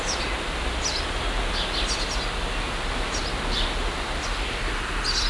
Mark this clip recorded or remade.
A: recorded